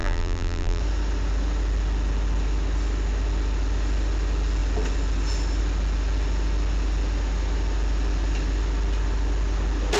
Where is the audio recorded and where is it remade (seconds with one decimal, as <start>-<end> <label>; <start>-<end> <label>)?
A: 0.0-0.8 remade; 0.8-10.0 recorded

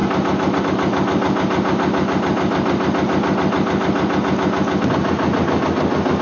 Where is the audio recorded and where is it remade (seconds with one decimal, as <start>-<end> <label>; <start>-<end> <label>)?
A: 0.0-6.2 recorded